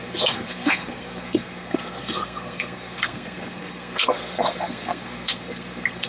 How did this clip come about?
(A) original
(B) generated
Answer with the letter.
B